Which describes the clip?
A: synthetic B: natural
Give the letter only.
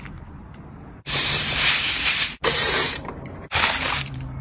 A